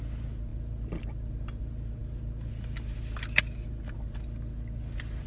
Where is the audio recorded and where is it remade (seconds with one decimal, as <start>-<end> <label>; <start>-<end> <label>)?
0.0-5.3 recorded